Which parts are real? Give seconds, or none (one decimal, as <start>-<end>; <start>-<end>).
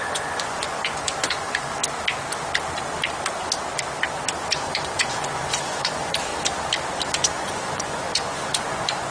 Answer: 1.8-4.4; 6.3-7.2